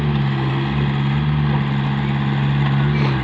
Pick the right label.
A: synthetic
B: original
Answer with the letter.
B